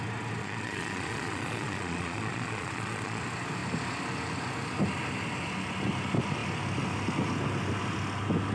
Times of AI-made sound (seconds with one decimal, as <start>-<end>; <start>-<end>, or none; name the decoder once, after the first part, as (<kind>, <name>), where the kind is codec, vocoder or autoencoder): 0.4-3.2 (vocoder, Vocos)